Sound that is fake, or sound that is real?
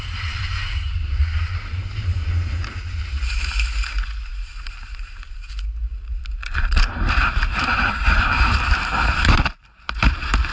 fake